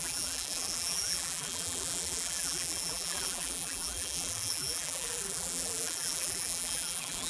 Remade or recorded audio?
remade